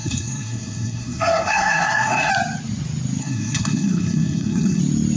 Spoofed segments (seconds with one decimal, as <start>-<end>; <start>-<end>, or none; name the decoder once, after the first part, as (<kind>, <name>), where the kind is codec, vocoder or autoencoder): 0.0-2.3 (codec, SNAC); 3.2-4.8